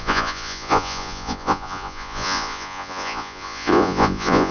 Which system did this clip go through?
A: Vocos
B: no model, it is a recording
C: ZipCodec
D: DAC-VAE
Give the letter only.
A